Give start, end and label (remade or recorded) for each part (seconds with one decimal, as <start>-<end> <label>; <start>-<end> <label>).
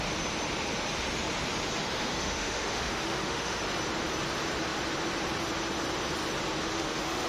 0.0-2.0 recorded; 2.0-3.6 remade; 3.6-6.7 recorded; 6.7-7.3 remade